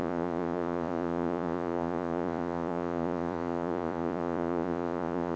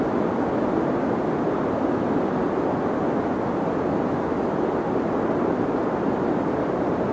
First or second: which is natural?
second